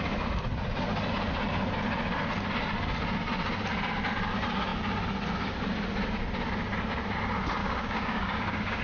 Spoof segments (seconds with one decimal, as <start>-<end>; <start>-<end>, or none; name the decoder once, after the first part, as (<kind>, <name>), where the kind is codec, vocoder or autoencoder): 7.6-8.8 (codec, DAC)